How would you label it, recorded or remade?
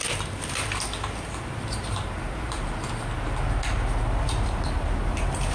recorded